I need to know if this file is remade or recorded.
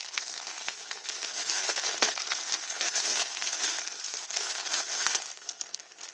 remade